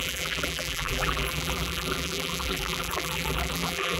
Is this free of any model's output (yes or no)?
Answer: no